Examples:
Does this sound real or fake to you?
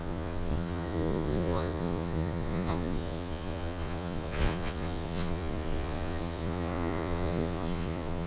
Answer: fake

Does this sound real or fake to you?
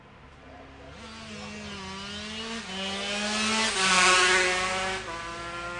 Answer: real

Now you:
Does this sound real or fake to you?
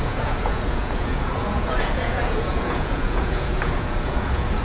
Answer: fake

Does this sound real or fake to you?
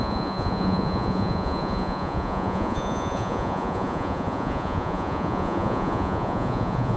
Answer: fake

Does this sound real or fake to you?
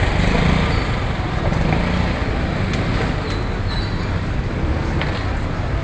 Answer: real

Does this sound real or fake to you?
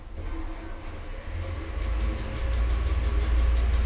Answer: real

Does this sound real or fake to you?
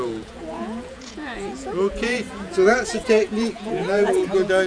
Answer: fake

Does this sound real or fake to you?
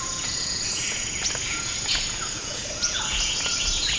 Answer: fake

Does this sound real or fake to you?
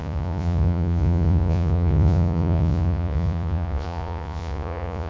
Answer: fake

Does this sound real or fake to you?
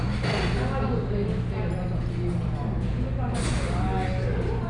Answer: real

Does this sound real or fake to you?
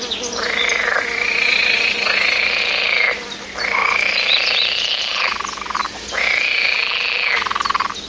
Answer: real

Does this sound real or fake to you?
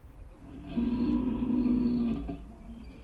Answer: real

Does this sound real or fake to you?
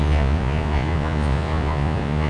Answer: fake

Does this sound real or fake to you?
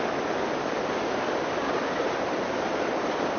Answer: real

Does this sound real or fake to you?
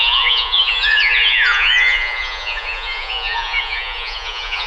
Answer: fake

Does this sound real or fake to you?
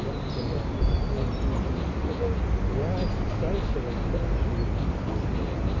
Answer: real